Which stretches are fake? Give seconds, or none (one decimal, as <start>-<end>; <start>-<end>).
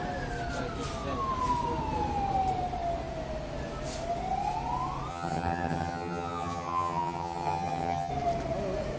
5.1-8.1